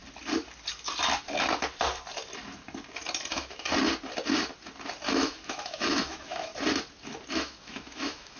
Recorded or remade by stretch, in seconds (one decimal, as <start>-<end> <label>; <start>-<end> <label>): 0.0-3.3 recorded; 3.3-3.7 remade; 3.7-5.1 recorded; 5.1-6.5 remade; 6.5-7.3 recorded; 7.3-8.4 remade